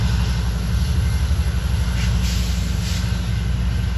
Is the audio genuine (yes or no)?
yes